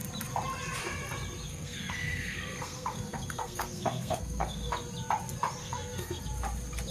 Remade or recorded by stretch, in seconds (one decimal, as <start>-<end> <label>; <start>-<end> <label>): 0.0-1.5 recorded; 1.5-4.7 remade; 4.7-5.6 recorded; 5.6-6.2 remade; 6.2-6.9 recorded